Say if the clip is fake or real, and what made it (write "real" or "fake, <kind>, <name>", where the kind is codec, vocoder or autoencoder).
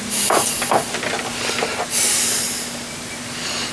real